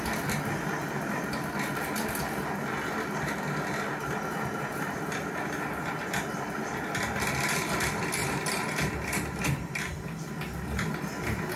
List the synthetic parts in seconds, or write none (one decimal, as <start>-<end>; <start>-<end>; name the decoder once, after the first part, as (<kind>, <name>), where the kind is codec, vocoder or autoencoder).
4.7-5.9 (vocoder, BigVGAN v2); 8.2-9.4